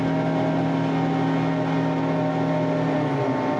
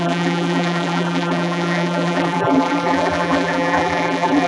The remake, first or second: second